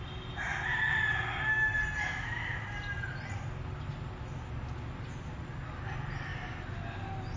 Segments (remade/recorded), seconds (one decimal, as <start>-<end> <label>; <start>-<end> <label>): 0.0-7.4 recorded